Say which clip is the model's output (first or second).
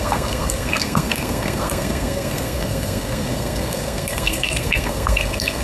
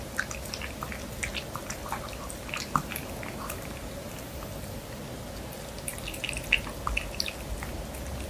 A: first